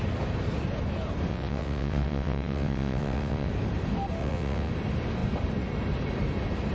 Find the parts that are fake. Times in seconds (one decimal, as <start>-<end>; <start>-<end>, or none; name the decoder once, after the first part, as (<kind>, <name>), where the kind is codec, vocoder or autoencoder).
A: 1.3-3.5 (vocoder, WaveNeXt); 4.2-4.7